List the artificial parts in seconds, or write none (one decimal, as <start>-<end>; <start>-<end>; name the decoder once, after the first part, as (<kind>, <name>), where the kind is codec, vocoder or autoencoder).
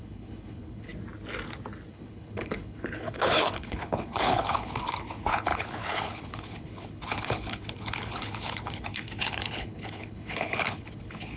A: 0.0-0.9 (codec, HILCodec); 1.9-11.4